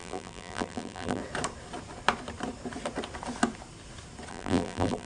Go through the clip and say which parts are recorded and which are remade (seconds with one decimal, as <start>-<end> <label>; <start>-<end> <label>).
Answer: 0.0-1.2 remade; 1.2-4.3 recorded; 4.3-5.1 remade